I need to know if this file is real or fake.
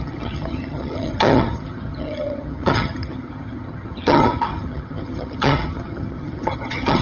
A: fake